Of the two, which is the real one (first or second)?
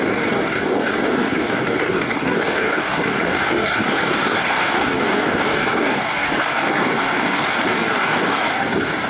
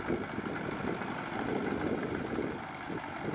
second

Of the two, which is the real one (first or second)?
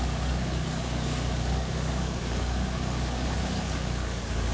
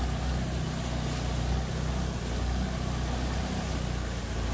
second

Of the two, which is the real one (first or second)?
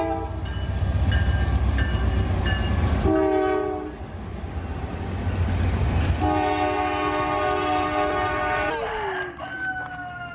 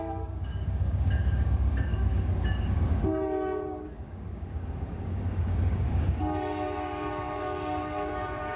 first